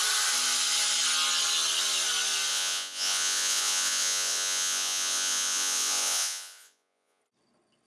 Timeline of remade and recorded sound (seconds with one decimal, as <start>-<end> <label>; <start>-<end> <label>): 0.0-2.5 recorded; 2.5-7.2 remade; 7.2-7.9 recorded